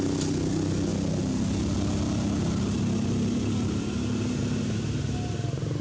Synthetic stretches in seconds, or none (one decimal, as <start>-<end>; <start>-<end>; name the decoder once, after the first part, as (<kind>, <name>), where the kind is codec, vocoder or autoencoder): none